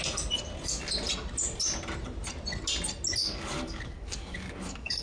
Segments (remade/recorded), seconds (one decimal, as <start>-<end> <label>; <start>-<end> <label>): 0.0-3.2 recorded; 3.2-5.0 remade